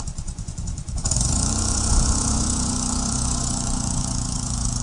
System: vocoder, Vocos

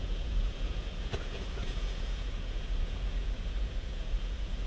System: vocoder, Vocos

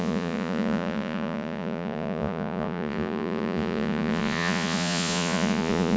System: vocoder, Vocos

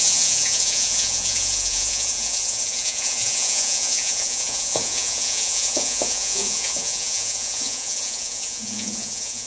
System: vocoder, Vocos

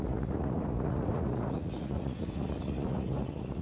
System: vocoder, Vocos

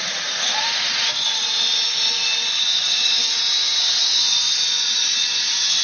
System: vocoder, Vocos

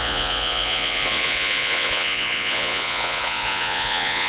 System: vocoder, Vocos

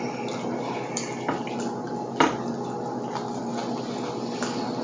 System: none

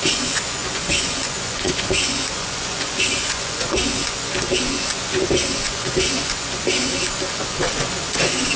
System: vocoder, Vocos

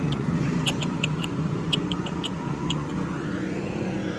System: vocoder, Vocos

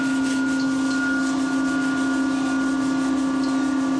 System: none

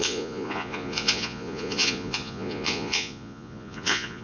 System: vocoder, Vocos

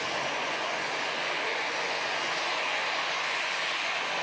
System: vocoder, Vocos